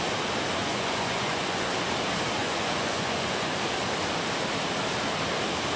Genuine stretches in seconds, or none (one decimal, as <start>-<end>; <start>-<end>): 0.0-0.6; 1.7-2.4; 3.6-5.8